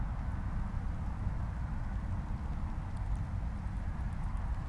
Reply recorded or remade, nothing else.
recorded